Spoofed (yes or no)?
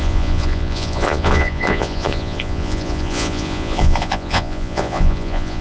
yes